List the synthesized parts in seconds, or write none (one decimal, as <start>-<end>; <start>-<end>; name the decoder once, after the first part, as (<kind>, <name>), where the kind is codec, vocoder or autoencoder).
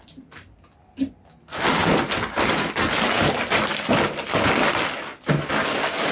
none